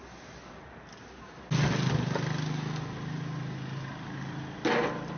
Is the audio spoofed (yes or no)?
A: no